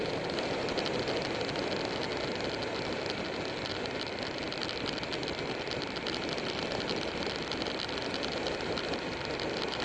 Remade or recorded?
recorded